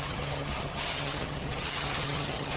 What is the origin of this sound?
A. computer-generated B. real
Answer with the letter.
A